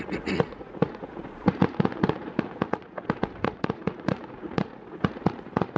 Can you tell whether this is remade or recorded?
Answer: remade